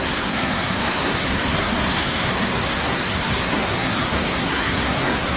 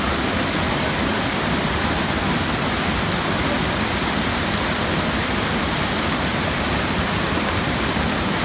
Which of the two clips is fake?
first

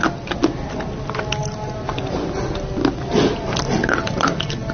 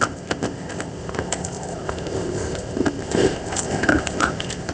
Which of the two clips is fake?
second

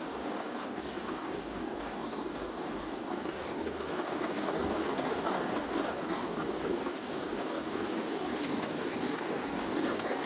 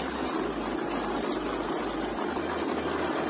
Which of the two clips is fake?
first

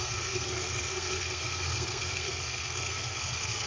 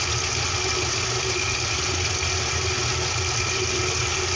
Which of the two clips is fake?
first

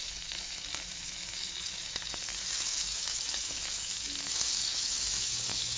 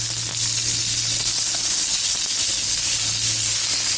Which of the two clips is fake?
first